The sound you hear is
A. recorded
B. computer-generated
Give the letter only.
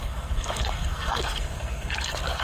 B